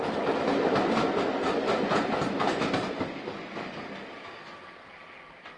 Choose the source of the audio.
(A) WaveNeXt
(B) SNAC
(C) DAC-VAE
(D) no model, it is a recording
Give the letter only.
D